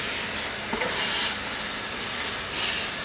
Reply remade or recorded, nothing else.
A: recorded